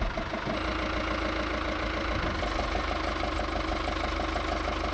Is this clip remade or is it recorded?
recorded